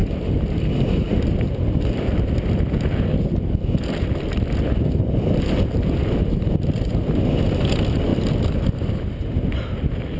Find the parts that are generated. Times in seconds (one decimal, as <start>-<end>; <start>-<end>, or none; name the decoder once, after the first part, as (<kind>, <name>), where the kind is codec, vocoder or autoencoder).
none